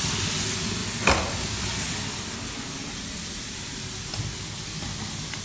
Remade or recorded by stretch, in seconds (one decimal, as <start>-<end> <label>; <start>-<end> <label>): 0.0-2.8 recorded; 2.8-4.1 remade; 4.1-5.4 recorded

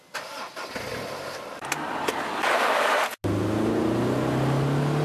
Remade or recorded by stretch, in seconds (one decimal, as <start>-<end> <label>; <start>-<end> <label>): 0.0-0.9 recorded; 0.9-2.2 remade; 2.2-5.0 recorded

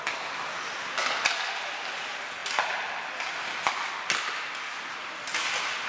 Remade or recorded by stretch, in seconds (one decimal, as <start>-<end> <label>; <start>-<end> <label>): 0.0-5.9 recorded

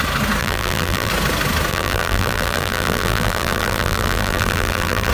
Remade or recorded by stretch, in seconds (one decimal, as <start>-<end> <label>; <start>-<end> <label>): 0.0-0.4 recorded; 0.4-1.1 remade; 1.1-1.7 recorded; 1.7-5.1 remade

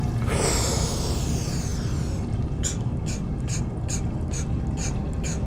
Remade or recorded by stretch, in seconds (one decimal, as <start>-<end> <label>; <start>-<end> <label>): 0.0-5.5 recorded

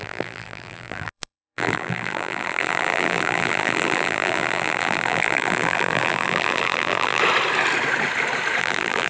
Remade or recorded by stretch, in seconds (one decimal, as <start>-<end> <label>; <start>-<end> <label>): 0.0-7.2 remade; 7.2-8.6 recorded; 8.6-9.1 remade

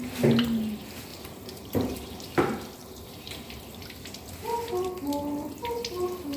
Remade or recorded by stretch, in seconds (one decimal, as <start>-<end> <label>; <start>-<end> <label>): 0.0-1.1 recorded; 1.1-2.4 remade; 2.4-2.8 recorded; 2.8-3.6 remade; 3.6-6.4 recorded